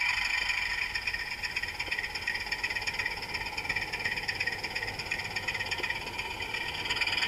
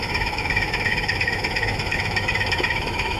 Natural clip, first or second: first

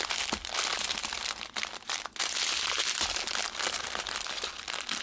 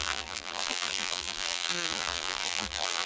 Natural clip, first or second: first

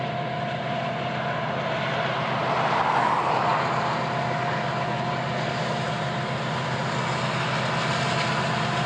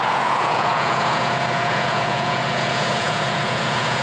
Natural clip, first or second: first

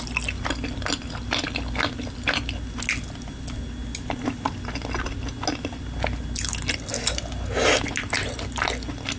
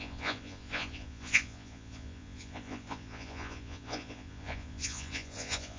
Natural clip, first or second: first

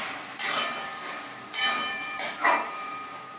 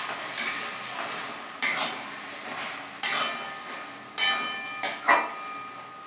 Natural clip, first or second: second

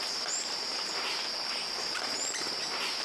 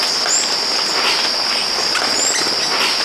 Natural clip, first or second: second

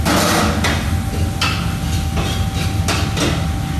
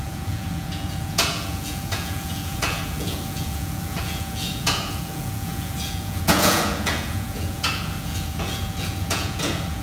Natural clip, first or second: first